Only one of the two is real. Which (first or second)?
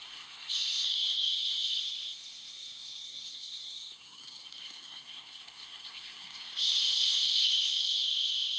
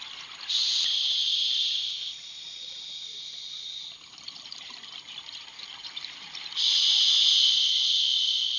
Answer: second